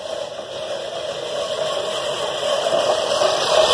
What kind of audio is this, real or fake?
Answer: real